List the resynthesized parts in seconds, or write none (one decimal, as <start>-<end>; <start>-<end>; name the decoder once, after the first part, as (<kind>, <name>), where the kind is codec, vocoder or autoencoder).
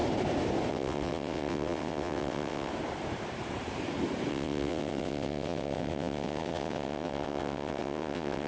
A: 0.7-2.7 (vocoder, WaveNeXt); 4.3-8.5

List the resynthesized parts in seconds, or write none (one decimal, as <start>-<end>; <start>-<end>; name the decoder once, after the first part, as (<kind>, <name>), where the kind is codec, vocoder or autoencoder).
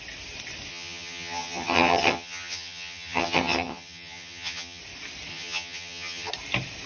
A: 0.7-4.8 (vocoder, HiFi-GAN); 5.3-6.3